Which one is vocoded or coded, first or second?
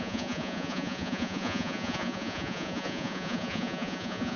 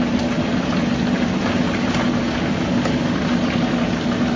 first